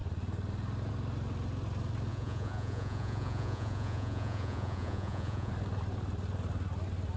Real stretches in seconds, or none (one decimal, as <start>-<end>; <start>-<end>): 0.0-2.1; 5.5-7.2

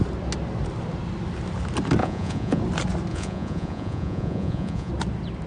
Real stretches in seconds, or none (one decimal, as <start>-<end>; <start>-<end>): 0.0-2.0; 2.6-3.1; 4.9-5.5

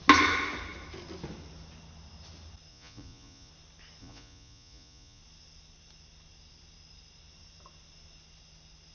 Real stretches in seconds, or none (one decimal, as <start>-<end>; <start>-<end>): 0.0-2.7; 3.5-4.0; 5.2-8.9

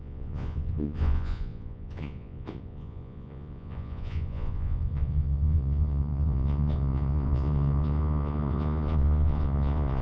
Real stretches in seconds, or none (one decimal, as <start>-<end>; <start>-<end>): none

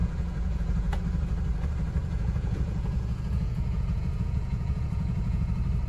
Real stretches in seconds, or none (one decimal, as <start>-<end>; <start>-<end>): 1.0-2.0; 5.5-5.9